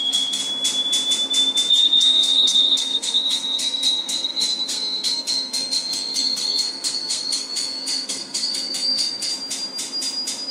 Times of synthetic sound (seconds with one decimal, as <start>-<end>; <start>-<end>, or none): 0.0-0.4; 1.7-9.3